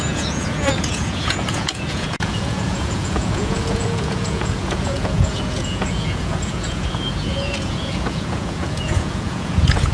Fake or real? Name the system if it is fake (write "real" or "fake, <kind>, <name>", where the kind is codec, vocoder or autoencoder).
fake, vocoder, Vocos